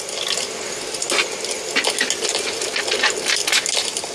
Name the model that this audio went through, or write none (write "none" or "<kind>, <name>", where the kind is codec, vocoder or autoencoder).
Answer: none